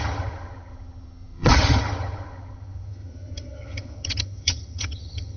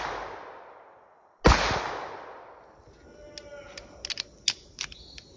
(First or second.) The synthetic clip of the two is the first